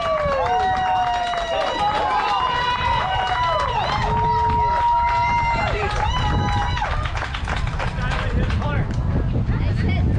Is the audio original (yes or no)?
yes